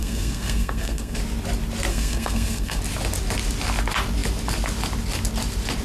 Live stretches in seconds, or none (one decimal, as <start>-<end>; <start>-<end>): 1.2-1.9; 2.8-5.8

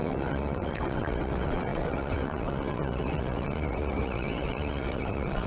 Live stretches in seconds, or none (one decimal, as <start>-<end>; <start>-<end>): none

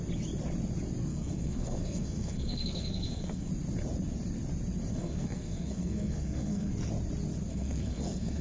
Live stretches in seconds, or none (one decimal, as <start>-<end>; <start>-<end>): 0.0-1.1; 3.5-4.9; 6.7-7.5

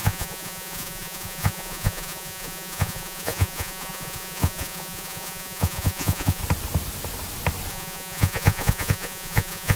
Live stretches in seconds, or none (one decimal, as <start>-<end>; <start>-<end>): 6.4-7.7

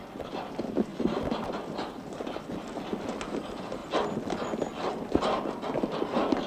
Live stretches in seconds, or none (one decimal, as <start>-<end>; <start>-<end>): 0.0-6.5

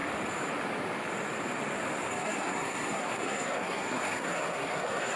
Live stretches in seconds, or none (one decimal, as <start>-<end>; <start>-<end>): 0.0-2.1